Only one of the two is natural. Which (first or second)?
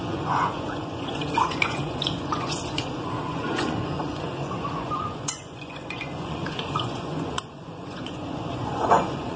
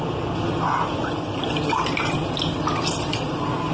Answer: second